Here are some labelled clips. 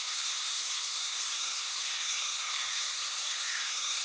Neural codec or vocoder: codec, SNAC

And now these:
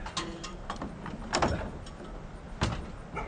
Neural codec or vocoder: none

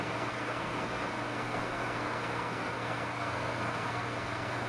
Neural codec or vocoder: codec, SNAC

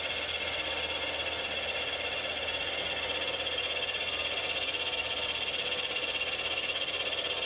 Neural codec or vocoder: none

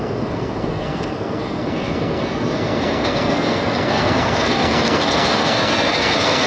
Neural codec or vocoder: codec, SNAC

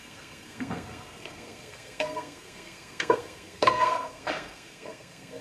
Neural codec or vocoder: codec, SNAC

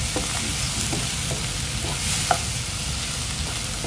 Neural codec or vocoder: none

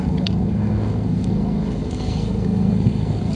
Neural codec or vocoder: codec, SNAC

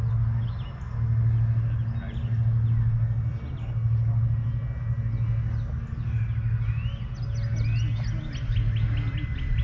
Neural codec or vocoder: none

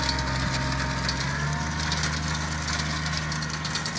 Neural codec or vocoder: none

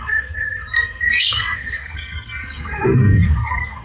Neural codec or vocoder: codec, SNAC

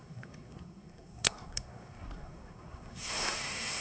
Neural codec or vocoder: codec, SNAC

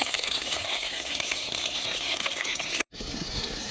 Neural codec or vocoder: codec, SNAC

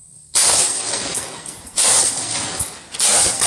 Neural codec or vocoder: codec, SNAC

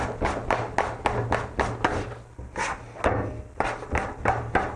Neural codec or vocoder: none